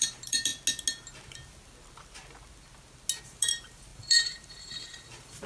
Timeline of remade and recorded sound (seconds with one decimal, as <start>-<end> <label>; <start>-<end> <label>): 0.0-0.5 remade; 0.5-3.2 recorded; 3.2-5.5 remade